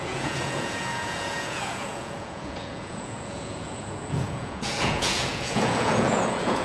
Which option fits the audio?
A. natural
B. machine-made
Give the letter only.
B